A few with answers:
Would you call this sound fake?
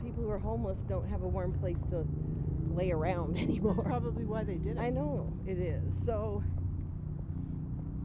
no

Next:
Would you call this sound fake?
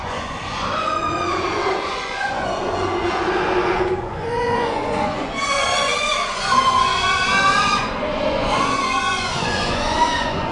yes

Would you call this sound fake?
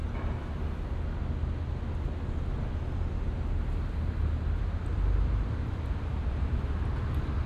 no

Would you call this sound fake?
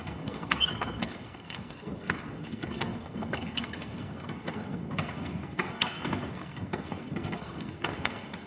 yes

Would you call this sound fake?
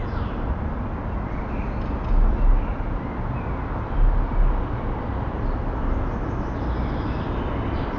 no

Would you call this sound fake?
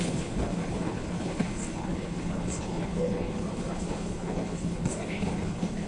yes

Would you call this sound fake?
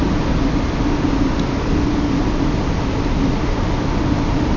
no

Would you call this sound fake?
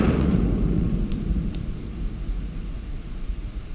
yes